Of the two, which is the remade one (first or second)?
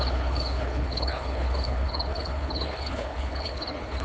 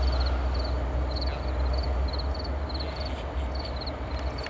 first